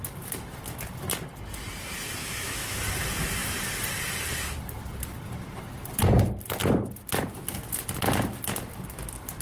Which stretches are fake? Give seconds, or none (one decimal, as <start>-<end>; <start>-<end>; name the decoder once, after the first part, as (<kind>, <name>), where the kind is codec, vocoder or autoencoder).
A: 2.2-2.8 (autoencoder, DAC-VAE)

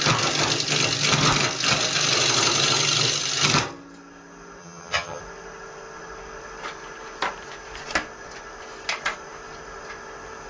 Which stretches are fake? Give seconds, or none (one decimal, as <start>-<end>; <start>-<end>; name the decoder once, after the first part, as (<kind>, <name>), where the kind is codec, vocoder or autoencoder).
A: 4.6-5.2 (vocoder, HiFi-GAN)

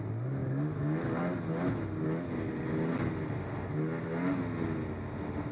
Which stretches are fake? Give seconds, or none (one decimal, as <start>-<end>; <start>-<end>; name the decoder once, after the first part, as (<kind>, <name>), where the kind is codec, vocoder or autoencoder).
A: none

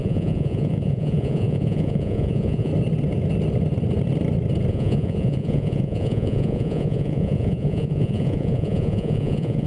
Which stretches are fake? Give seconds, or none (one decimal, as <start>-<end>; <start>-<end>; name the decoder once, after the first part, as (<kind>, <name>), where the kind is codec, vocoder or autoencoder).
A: 0.0-2.7 (vocoder, Vocos); 4.7-9.7

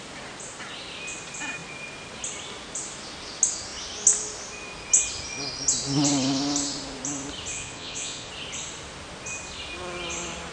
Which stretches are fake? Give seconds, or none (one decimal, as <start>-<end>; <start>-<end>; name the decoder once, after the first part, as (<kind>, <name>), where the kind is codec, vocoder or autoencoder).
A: 7.5-8.3 (vocoder, Vocos)

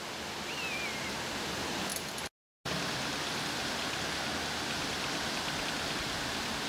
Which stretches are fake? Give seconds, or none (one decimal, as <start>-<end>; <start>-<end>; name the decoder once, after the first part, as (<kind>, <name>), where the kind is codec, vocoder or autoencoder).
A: none

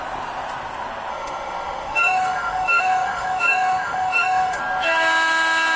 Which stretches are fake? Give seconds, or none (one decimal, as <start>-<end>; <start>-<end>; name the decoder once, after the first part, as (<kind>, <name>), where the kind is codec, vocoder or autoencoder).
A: 1.1-4.6 (autoencoder, DAC-VAE)

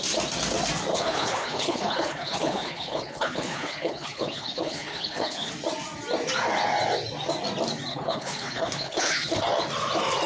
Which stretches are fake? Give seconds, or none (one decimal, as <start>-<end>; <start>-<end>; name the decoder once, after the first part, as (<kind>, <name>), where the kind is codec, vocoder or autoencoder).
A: 0.9-5.5 (codec, HILCodec); 7.9-9.4